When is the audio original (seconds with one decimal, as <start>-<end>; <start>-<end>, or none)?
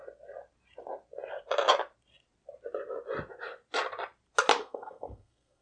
0.0-4.6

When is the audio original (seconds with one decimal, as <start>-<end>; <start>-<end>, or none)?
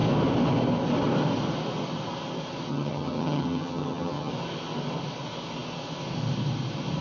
0.0-2.7; 4.3-7.0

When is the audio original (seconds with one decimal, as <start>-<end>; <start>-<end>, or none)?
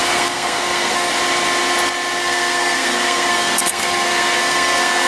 1.1-2.2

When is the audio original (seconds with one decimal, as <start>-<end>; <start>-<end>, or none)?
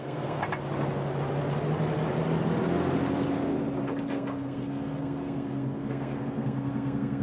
0.4-4.1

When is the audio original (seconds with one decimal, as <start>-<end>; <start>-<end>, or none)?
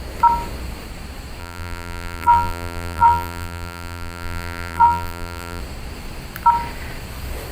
0.0-1.4; 5.6-7.5